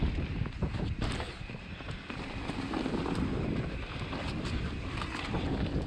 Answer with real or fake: real